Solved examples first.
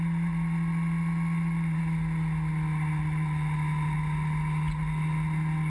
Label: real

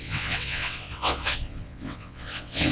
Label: fake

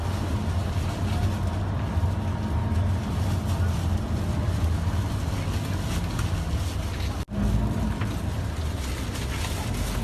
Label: real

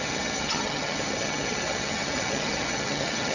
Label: fake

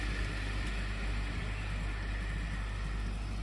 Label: real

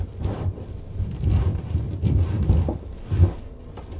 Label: fake